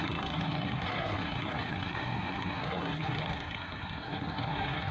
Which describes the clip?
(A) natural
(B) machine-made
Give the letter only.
B